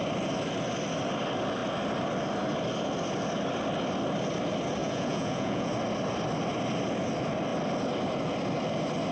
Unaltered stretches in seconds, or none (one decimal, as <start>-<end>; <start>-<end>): 0.0-4.8; 5.7-9.1